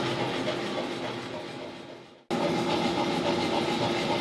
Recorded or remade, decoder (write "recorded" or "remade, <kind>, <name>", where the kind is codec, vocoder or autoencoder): recorded